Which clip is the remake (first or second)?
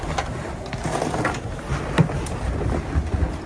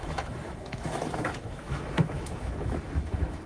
second